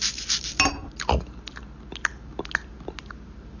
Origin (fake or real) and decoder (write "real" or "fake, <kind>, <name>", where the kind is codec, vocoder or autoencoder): real